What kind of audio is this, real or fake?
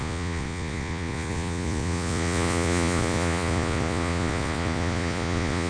fake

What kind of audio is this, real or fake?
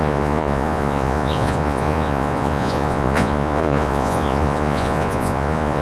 fake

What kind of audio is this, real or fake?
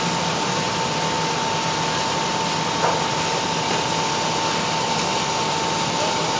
real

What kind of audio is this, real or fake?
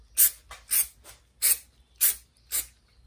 real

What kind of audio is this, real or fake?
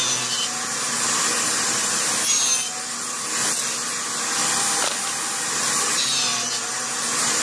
real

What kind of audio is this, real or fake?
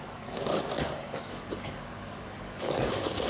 fake